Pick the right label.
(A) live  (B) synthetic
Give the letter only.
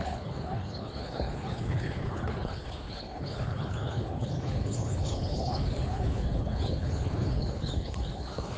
B